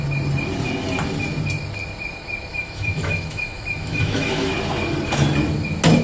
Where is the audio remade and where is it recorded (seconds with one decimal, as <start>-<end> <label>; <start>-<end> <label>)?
0.0-2.5 recorded; 2.5-4.5 remade; 4.5-6.0 recorded